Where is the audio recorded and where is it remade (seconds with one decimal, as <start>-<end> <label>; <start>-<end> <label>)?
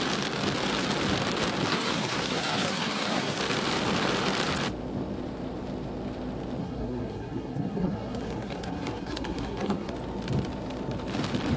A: 0.0-1.7 recorded; 1.7-3.4 remade; 3.4-6.6 recorded; 6.6-9.9 remade; 9.9-11.6 recorded